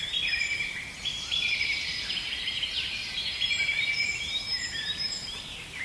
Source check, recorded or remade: remade